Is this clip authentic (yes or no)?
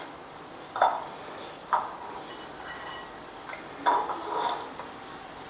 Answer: yes